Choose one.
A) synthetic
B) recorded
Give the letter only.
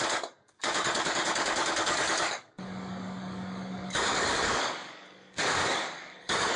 A